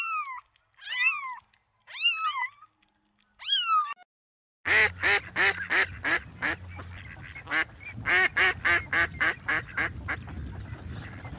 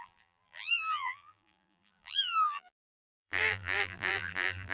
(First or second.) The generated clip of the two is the second